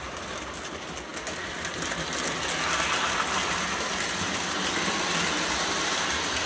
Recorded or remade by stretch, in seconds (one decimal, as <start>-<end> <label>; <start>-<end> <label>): 0.0-6.5 recorded